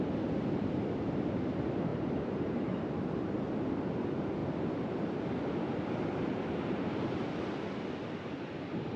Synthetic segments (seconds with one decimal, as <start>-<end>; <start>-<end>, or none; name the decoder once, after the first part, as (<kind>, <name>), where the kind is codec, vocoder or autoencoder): none